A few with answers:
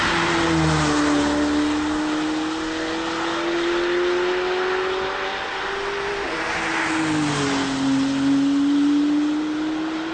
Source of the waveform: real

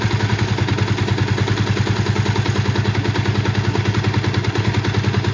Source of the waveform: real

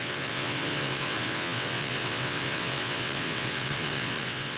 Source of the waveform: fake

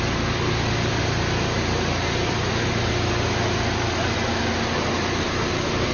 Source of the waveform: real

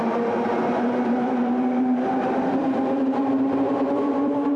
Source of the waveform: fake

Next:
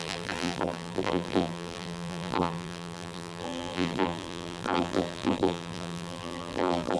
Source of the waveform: fake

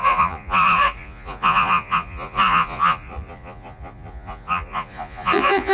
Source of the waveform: fake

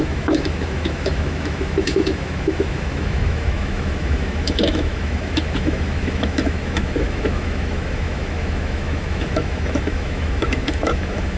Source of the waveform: fake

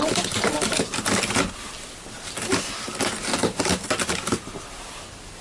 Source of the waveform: real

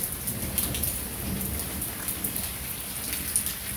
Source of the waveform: real